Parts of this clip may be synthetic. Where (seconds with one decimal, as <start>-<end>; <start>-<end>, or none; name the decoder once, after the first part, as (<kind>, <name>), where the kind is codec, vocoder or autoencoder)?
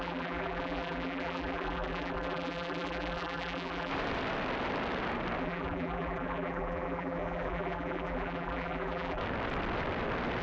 0.0-3.9 (vocoder, BigVGAN v2); 5.4-9.2